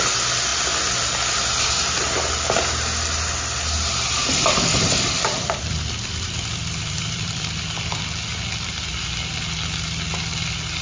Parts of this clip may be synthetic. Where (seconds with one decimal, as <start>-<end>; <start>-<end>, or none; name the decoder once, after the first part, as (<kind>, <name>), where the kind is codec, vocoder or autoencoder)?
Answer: 4.2-7.6 (vocoder, BigVGAN v2)